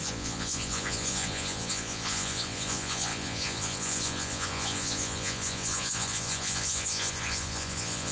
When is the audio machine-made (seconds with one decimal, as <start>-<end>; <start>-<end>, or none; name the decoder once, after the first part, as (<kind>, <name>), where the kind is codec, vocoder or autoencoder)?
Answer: 0.0-8.1 (vocoder, Vocos)